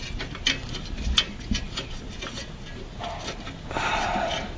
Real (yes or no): yes